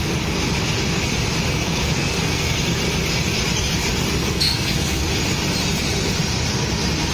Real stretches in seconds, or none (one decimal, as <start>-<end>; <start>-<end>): 0.0-1.5; 2.6-4.2; 5.1-7.1